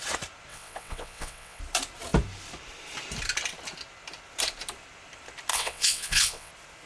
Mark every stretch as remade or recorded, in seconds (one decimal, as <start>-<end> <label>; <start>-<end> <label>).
0.0-0.5 recorded; 0.5-1.6 remade; 1.6-5.5 recorded; 5.5-6.5 remade; 6.5-6.9 recorded